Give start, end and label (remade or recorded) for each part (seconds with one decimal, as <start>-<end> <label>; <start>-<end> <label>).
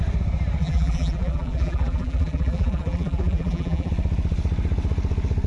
0.0-0.6 recorded; 0.6-3.9 remade; 3.9-5.5 recorded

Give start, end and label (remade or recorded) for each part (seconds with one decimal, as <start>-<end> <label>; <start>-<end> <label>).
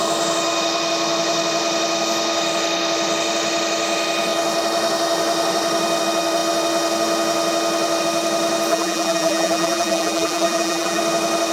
0.0-8.7 recorded; 8.7-11.0 remade; 11.0-11.5 recorded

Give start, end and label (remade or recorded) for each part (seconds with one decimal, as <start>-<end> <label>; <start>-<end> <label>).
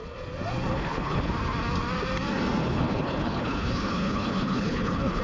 0.0-0.7 recorded; 0.7-1.3 remade; 1.3-2.6 recorded; 2.6-5.2 remade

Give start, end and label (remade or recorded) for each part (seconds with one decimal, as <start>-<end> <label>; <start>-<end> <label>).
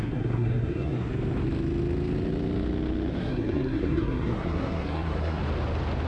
0.0-1.1 remade; 1.1-3.2 recorded; 3.2-5.4 remade; 5.4-6.1 recorded